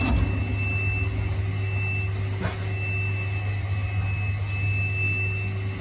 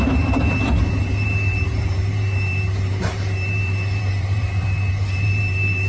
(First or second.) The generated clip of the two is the second